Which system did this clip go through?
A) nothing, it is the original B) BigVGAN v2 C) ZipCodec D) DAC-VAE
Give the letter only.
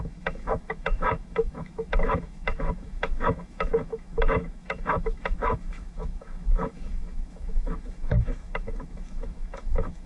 D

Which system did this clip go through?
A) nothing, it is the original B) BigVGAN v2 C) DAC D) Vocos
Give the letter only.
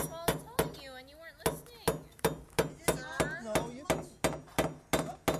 A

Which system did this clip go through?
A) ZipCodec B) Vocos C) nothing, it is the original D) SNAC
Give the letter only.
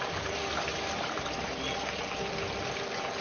C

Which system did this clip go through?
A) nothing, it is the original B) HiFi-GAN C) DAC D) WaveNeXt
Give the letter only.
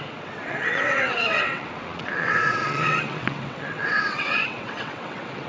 D